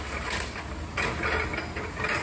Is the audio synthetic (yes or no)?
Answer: no